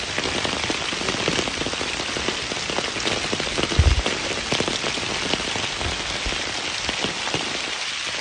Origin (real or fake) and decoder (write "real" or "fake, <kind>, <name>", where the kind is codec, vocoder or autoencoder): real